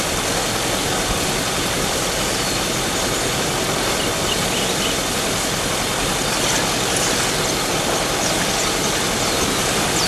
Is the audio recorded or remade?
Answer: remade